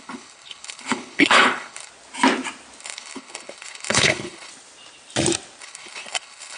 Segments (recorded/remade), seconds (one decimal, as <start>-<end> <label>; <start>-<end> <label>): 0.0-1.9 remade; 1.9-2.8 recorded; 2.8-4.5 remade; 4.5-5.6 recorded; 5.6-6.6 remade